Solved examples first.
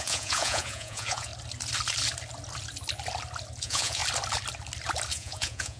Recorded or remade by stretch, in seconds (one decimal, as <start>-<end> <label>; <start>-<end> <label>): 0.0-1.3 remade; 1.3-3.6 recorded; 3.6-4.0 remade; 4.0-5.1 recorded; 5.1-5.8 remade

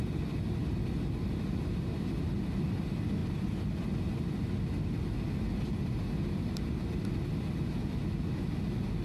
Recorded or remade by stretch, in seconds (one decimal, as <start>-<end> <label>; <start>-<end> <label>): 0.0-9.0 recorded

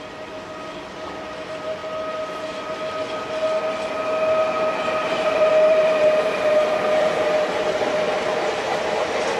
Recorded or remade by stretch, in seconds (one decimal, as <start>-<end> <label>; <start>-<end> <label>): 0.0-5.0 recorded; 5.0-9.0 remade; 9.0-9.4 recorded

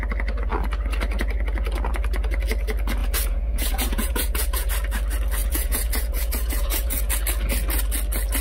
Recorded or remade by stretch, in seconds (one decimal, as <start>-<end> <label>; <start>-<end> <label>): 0.0-3.0 recorded; 3.0-4.7 remade; 4.7-5.4 recorded; 5.4-7.1 remade; 7.1-8.4 recorded

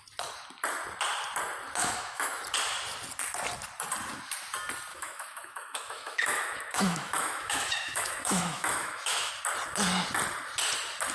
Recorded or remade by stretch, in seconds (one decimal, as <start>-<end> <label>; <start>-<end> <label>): 0.0-1.8 recorded; 1.8-2.4 remade; 2.4-4.9 recorded; 4.9-9.3 remade; 9.3-11.1 recorded

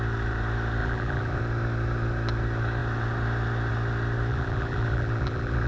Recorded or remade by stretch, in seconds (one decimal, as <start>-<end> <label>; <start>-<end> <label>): 0.0-0.8 recorded; 0.8-1.4 remade; 1.4-4.3 recorded; 4.3-5.7 remade

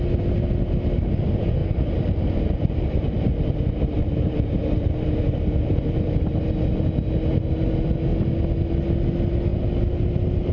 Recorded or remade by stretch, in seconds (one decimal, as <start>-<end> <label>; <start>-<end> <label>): 0.0-1.6 recorded; 1.6-6.5 remade; 6.5-10.5 recorded